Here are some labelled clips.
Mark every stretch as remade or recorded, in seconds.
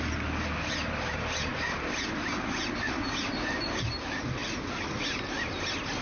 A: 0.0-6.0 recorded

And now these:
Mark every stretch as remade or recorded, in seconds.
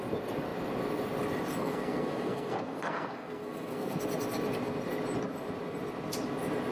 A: 0.0-1.6 recorded; 1.6-4.0 remade; 4.0-6.7 recorded